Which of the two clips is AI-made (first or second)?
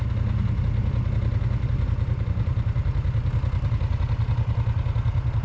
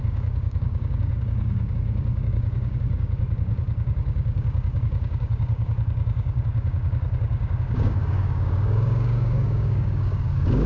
second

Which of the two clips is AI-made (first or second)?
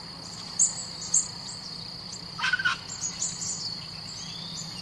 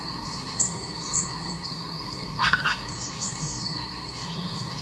second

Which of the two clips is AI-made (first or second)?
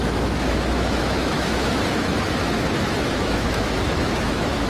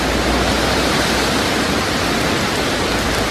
first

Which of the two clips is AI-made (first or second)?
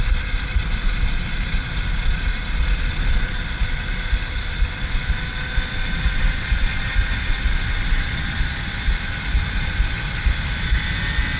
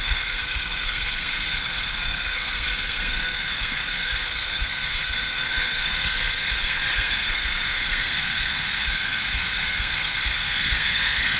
second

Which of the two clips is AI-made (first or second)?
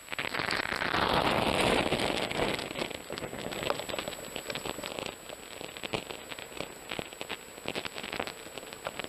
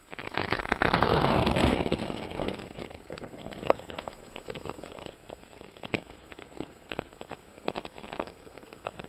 second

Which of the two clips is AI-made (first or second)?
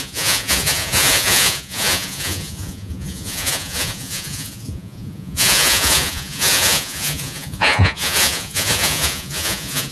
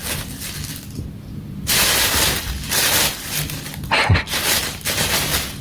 first